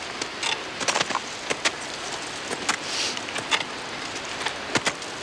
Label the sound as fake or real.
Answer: real